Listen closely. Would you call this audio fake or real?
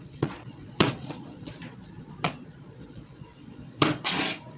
fake